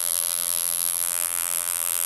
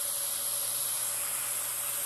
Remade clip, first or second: first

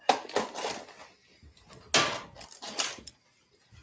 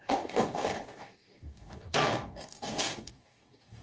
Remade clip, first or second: second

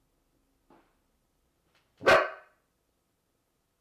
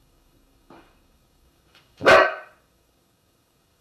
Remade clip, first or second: second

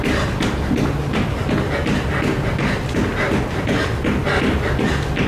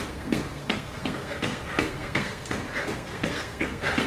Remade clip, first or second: second